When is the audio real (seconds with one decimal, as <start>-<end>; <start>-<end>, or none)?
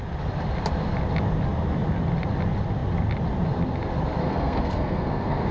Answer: 0.0-4.2